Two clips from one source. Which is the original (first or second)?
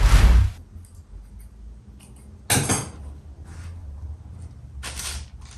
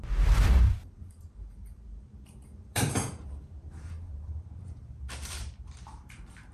first